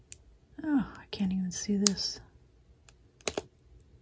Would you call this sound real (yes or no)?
yes